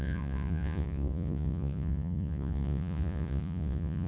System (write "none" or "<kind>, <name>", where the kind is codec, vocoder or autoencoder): vocoder, Vocos